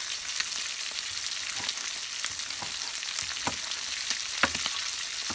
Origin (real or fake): real